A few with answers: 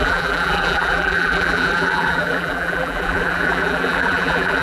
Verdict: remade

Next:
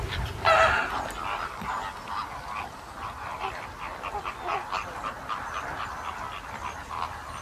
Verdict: remade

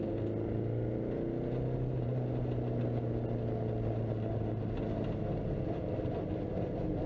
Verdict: recorded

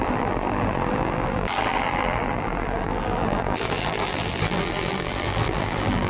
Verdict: remade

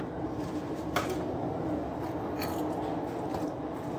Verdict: recorded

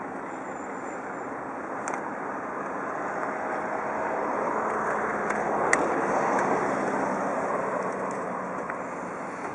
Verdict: recorded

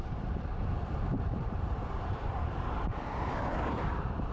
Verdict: remade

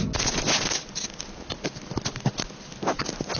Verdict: recorded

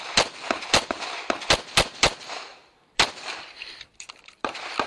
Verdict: remade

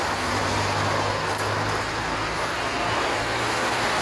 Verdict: recorded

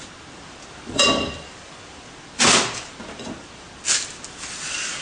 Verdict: remade